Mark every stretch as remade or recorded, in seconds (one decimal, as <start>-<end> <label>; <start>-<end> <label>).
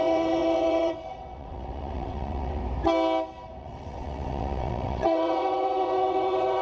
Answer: 0.0-2.6 remade; 2.6-3.6 recorded; 3.6-6.6 remade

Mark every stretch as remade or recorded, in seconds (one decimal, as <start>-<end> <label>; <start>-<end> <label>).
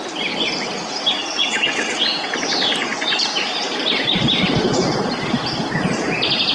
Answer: 0.0-1.2 recorded; 1.2-2.3 remade; 2.3-6.5 recorded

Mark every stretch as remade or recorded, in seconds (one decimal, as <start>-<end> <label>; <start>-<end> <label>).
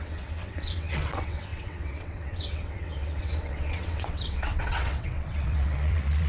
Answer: 0.0-6.3 remade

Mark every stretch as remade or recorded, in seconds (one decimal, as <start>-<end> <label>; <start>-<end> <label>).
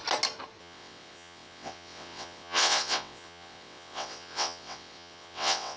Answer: 0.0-0.6 recorded; 0.6-5.8 remade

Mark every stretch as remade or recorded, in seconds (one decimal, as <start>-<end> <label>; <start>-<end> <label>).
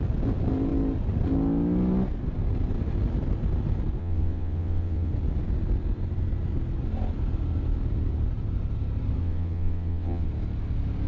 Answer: 0.0-4.0 recorded; 4.0-5.1 remade; 5.1-9.2 recorded; 9.2-10.3 remade; 10.3-11.1 recorded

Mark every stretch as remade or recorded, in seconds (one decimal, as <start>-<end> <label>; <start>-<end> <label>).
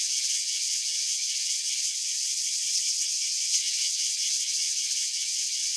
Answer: 0.0-5.8 remade